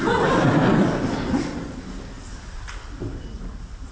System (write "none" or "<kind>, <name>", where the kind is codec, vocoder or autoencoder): none